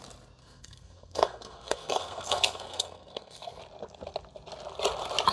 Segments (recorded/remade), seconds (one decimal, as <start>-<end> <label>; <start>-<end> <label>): 0.0-0.4 recorded; 0.4-3.6 remade; 3.6-5.3 recorded

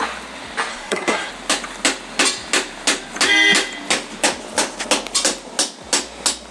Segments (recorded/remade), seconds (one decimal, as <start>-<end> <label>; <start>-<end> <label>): 0.0-0.7 recorded; 0.7-1.3 remade; 1.3-6.5 recorded